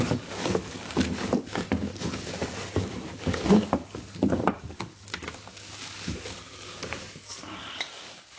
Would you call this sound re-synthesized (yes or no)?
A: yes